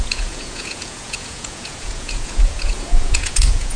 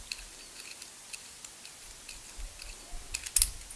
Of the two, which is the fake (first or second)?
first